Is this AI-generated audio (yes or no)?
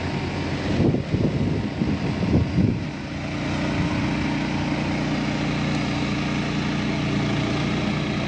no